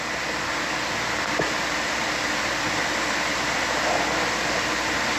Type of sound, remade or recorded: recorded